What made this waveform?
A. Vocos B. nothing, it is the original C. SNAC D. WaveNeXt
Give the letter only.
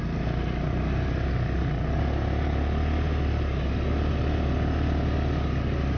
B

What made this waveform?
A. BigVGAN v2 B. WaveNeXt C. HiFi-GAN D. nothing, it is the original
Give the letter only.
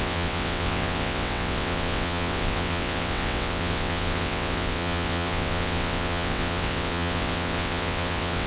B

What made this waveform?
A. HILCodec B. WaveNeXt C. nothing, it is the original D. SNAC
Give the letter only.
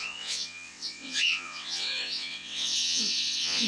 B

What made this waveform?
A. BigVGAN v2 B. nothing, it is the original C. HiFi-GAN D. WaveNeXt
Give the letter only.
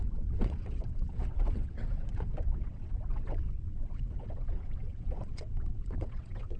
D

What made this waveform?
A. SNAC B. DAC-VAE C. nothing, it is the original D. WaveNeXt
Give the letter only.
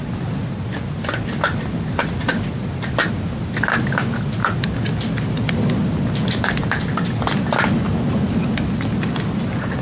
C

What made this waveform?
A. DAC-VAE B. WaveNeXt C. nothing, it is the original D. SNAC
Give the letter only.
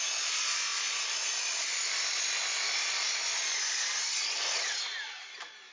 C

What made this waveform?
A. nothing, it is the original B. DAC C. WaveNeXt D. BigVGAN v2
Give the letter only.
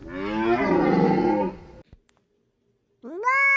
A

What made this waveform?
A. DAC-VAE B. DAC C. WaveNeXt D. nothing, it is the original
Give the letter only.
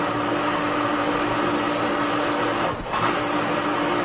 D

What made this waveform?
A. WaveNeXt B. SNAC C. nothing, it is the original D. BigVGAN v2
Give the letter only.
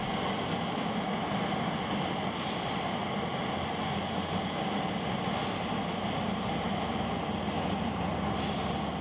C